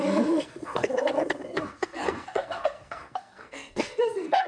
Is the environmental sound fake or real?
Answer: fake